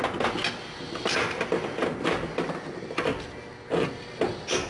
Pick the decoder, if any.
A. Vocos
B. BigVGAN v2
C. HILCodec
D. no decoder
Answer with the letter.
D